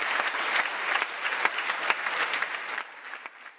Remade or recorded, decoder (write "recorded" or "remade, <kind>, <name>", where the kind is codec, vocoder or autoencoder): remade, vocoder, BigVGAN v2